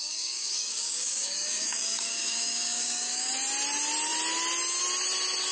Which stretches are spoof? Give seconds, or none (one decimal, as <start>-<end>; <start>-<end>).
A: 0.0-3.3